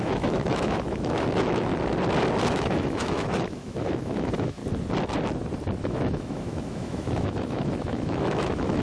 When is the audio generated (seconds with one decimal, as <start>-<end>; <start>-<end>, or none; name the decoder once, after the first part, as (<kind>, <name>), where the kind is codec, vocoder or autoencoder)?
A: 0.0-1.7 (autoencoder, DAC-VAE); 2.4-4.6; 5.8-8.8